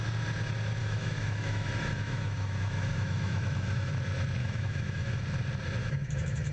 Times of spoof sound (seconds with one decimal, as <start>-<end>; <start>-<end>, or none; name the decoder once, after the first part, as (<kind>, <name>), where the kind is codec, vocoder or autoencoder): 0.8-3.9 (autoencoder, DAC-VAE); 4.4-5.2; 5.8-6.5